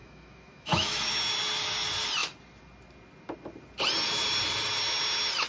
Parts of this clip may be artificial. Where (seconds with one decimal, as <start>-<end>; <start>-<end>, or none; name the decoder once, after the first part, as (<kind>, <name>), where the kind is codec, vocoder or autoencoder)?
0.0-1.2 (autoencoder, DAC-VAE)